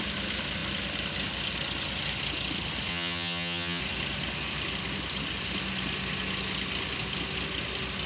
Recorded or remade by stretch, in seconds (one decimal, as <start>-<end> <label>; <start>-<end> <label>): 0.0-2.9 recorded; 2.9-3.8 remade; 3.8-8.1 recorded